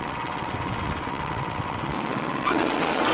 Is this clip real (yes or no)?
no